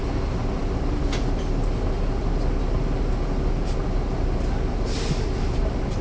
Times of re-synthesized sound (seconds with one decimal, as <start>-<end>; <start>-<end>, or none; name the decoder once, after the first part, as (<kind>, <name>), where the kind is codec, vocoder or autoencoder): none

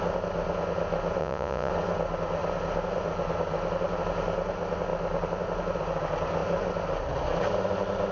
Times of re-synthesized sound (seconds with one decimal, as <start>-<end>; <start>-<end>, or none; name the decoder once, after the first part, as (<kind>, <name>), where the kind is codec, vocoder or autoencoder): 1.2-1.7 (vocoder, Vocos)

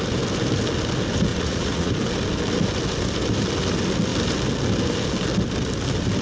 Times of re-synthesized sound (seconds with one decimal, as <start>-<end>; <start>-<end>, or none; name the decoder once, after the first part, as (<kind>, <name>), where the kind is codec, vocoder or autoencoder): 1.3-1.9 (vocoder, Vocos)

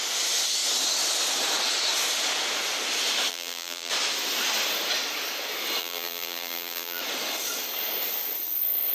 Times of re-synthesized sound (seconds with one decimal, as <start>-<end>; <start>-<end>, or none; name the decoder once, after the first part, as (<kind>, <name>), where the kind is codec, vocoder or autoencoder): 3.3-3.9 (vocoder, BigVGAN v2); 5.8-7.0

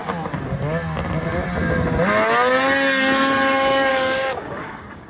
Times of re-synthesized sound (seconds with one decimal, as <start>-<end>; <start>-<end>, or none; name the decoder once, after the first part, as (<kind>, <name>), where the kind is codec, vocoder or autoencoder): 3.9-5.1 (codec, DAC)

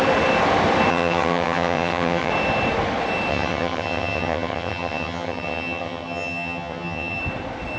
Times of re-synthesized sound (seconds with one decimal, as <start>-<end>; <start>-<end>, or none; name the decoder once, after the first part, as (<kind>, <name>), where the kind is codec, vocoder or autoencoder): 0.9-2.3 (vocoder, HiFi-GAN); 3.3-7.2